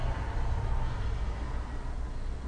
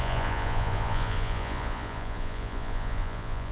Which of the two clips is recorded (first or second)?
first